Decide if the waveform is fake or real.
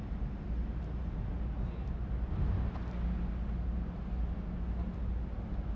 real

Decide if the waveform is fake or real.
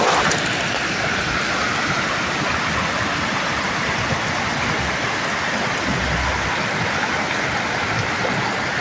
real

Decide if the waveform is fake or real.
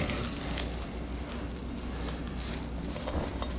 real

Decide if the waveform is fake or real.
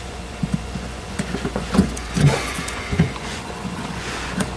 fake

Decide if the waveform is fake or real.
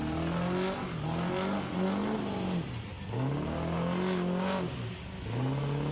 real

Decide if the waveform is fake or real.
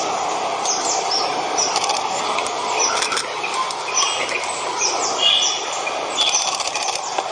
real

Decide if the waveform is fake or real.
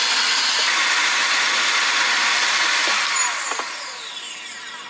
real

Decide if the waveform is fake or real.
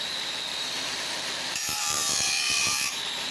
fake